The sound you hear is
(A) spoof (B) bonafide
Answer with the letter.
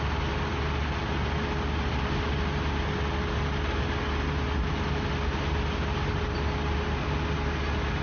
B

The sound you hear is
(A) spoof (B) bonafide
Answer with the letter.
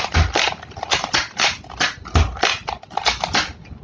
B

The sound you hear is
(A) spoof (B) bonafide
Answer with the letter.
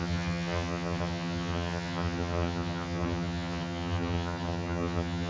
A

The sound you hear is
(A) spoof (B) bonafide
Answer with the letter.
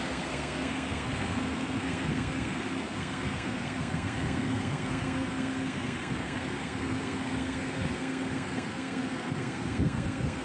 A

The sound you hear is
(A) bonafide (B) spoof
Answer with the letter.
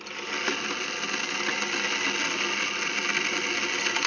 A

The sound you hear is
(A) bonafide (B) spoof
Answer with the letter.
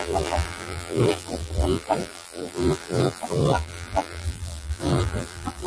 B